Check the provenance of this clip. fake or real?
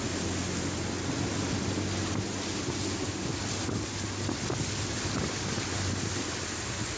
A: real